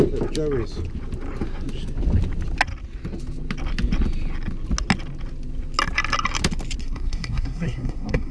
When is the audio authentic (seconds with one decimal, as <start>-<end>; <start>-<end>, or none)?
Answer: 0.0-6.8